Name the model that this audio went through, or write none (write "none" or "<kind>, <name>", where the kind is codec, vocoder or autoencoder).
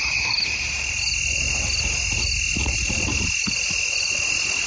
none